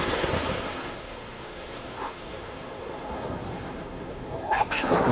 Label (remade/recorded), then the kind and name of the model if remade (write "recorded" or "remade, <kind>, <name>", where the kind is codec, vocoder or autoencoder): remade, codec, SNAC